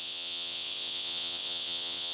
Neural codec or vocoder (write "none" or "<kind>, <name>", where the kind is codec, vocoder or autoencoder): vocoder, WaveNeXt